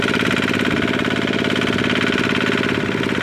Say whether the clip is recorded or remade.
recorded